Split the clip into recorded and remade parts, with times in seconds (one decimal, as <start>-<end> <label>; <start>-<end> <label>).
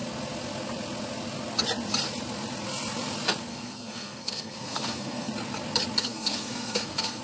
0.0-3.5 recorded; 3.5-5.3 remade; 5.3-6.0 recorded; 6.0-7.2 remade